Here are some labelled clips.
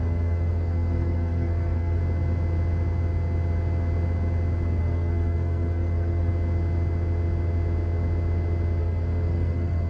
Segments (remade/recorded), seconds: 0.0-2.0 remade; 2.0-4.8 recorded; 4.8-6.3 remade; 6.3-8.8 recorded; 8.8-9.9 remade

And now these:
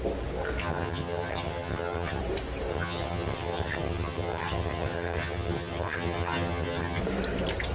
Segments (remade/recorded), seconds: 0.0-0.6 recorded; 0.6-2.2 remade; 2.2-2.7 recorded; 2.7-7.0 remade; 7.0-7.7 recorded

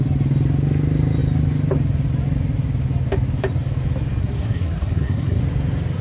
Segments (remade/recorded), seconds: 0.0-4.2 recorded; 4.2-5.4 remade; 5.4-6.0 recorded

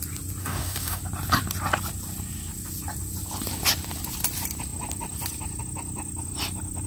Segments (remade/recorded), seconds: 0.0-0.4 recorded; 0.4-1.0 remade; 1.0-6.9 recorded

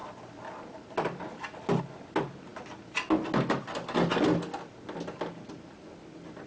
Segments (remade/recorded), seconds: 0.0-6.5 recorded

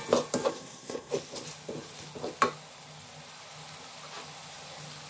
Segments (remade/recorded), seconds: 0.0-0.5 recorded; 0.5-1.1 remade; 1.1-5.1 recorded

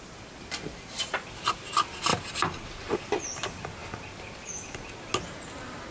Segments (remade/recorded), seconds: 0.0-5.9 recorded

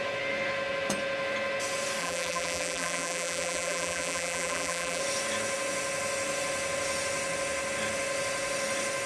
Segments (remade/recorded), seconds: 0.0-2.0 recorded; 2.0-5.0 remade; 5.0-9.1 recorded